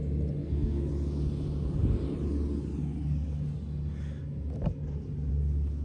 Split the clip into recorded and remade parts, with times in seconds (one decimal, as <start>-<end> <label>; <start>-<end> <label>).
0.0-0.4 recorded; 0.4-0.9 remade; 0.9-5.8 recorded